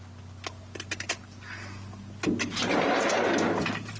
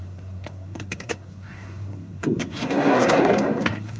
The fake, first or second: second